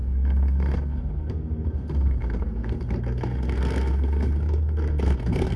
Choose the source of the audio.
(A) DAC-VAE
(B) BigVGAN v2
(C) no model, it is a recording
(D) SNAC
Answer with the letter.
D